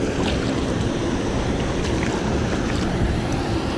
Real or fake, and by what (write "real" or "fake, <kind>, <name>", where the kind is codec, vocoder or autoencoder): real